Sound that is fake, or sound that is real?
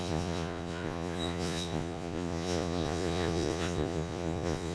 fake